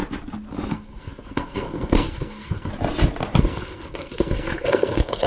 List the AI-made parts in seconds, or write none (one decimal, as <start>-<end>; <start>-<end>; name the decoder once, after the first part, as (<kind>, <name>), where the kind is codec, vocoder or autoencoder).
0.7-2.7 (codec, SNAC); 3.4-5.3